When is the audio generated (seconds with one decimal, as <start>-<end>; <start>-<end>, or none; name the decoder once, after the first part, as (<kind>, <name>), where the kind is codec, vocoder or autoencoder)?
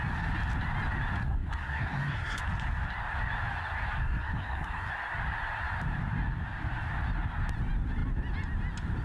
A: 1.2-2.4 (codec, SNAC); 4.0-4.9